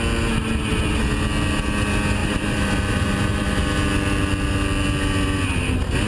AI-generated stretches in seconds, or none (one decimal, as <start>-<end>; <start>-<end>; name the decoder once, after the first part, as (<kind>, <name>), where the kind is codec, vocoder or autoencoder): 2.2-3.6 (vocoder, BigVGAN v2)